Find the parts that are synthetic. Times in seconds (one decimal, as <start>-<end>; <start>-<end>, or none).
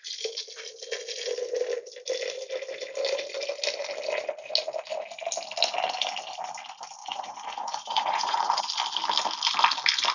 7.0-8.6